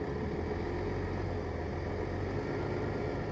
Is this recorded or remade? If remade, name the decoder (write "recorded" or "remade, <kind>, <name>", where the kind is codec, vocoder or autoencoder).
recorded